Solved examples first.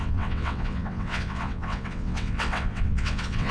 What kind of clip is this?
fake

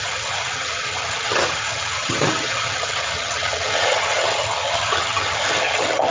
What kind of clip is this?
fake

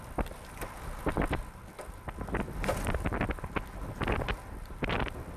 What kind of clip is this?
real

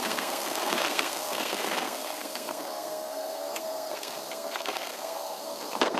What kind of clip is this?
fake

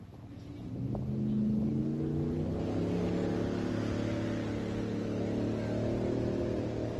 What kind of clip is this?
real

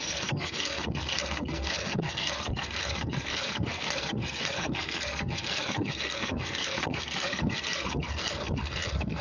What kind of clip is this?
fake